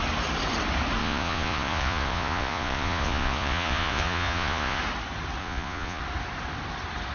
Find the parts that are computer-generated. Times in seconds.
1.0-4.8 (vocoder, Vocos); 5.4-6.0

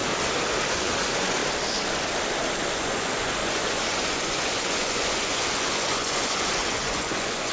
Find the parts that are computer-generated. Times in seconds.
0.7-1.4 (vocoder, Vocos); 2.7-7.5

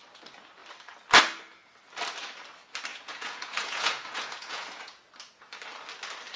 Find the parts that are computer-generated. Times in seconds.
2.9-5.0 (vocoder, Vocos)

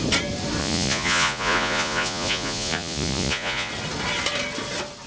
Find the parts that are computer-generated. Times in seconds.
0.6-3.7 (vocoder, Vocos)

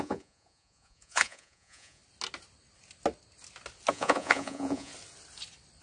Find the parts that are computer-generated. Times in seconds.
0.0-2.0 (vocoder, Vocos); 3.9-4.9

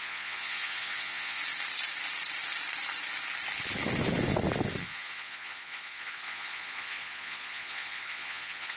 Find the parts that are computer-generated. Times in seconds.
0.0-1.4 (vocoder, Vocos); 4.8-8.8

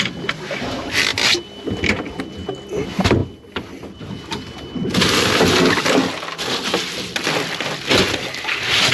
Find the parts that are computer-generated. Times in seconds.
none

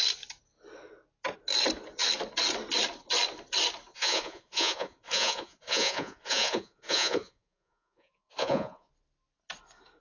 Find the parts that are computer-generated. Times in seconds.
3.9-8.9 (vocoder, Vocos)